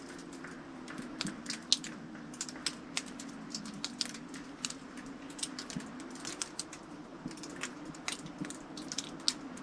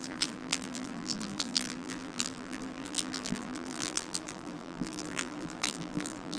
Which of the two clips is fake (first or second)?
second